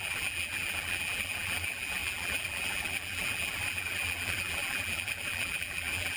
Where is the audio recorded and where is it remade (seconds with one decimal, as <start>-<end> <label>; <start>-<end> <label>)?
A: 0.0-6.2 remade